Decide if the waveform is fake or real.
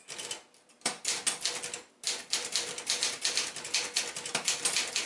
real